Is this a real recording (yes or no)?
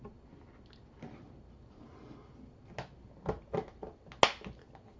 yes